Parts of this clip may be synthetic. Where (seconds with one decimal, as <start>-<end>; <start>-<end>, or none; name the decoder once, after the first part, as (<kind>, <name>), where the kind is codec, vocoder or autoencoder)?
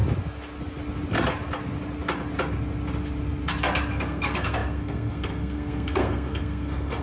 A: 3.9-7.0 (codec, SNAC)